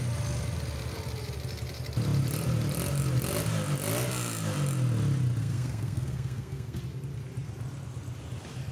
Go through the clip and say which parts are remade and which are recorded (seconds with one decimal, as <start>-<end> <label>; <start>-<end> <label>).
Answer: 0.0-5.4 recorded; 5.4-6.8 remade; 6.8-8.7 recorded